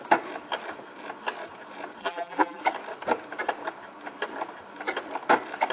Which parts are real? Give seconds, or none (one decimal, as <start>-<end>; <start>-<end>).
0.0-2.0; 2.6-5.7